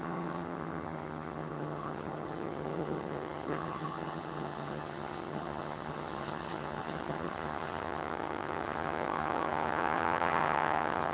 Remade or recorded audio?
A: remade